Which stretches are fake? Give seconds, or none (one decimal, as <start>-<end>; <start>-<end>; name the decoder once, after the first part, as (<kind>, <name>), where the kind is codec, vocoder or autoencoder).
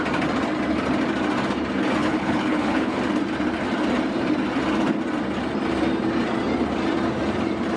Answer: 2.0-3.0 (codec, HILCodec)